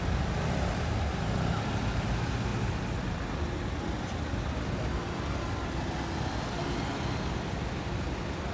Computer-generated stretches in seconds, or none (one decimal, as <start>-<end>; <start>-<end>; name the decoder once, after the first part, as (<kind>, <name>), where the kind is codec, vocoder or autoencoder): none